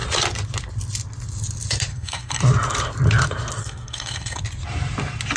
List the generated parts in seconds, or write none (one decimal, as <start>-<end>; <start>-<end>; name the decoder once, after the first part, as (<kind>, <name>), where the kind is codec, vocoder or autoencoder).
1.9-2.4 (codec, SNAC); 3.6-4.4

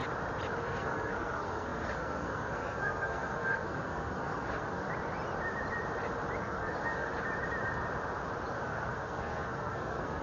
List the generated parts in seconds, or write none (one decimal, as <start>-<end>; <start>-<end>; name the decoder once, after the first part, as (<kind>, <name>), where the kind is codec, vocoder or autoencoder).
0.6-4.9 (codec, SNAC); 6.4-7.1; 8.6-10.2

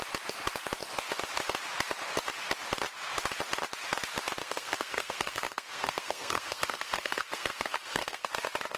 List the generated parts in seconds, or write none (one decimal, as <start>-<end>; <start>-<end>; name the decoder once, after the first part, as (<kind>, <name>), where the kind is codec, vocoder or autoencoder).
4.4-8.3 (codec, SNAC)

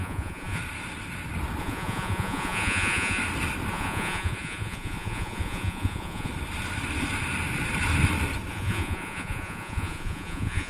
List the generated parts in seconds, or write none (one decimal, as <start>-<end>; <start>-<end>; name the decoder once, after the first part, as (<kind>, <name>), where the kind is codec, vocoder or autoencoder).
0.0-0.6 (vocoder, Vocos); 1.6-3.2; 3.7-6.3; 8.5-10.7

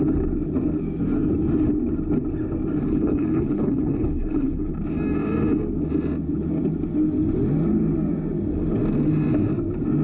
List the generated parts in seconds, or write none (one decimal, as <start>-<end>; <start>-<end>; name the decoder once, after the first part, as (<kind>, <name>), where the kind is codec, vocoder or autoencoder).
2.9-4.7 (codec, HILCodec)

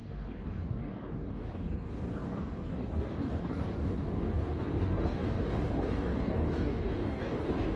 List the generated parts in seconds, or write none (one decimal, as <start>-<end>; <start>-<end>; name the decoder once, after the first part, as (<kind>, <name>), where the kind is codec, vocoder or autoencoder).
0.0-7.8 (codec, DAC)